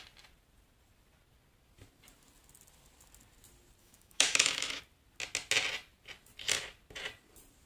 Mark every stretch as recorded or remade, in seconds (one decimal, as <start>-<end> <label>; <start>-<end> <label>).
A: 0.0-3.8 recorded; 3.8-4.8 remade; 4.8-7.7 recorded